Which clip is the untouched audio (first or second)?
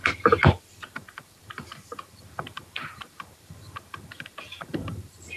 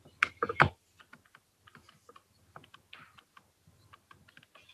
second